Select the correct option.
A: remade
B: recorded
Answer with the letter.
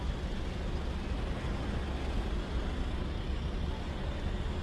B